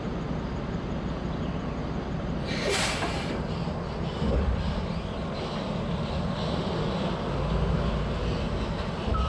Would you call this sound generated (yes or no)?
no